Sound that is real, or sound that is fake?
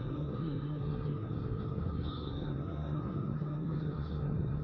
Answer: fake